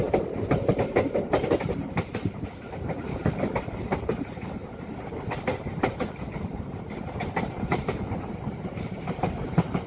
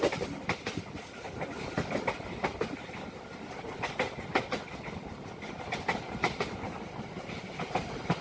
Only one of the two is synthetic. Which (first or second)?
first